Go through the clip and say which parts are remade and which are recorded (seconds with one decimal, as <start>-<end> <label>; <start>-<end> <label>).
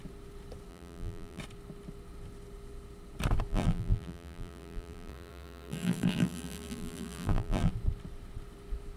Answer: 0.0-0.7 recorded; 0.7-1.4 remade; 1.4-3.5 recorded; 3.5-7.7 remade; 7.7-9.0 recorded